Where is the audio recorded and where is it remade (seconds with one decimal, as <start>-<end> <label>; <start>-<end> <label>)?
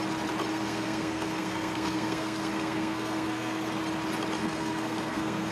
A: 0.0-0.5 recorded; 0.5-3.8 remade; 3.8-4.4 recorded; 4.4-5.5 remade